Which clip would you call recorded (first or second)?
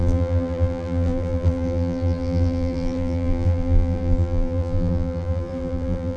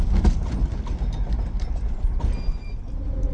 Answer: second